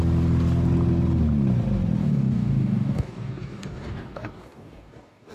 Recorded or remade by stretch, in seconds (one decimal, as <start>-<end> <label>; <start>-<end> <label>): 0.0-2.0 recorded; 2.0-5.3 remade